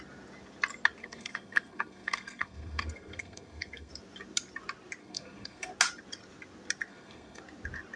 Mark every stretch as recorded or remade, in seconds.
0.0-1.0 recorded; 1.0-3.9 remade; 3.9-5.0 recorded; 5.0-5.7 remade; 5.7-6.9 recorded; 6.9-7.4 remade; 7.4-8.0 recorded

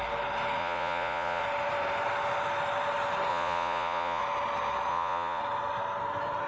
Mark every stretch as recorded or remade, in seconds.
0.0-0.6 recorded; 0.6-1.4 remade; 1.4-3.3 recorded; 3.3-4.2 remade; 4.2-4.9 recorded; 4.9-5.4 remade; 5.4-6.5 recorded